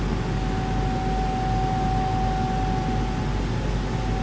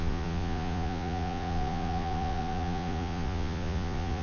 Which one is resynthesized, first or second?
second